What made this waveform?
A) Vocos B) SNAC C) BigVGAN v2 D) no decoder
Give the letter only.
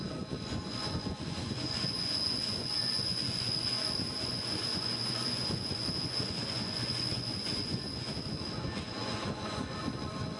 A